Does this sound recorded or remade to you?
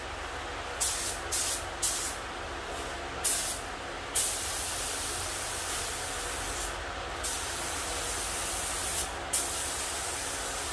recorded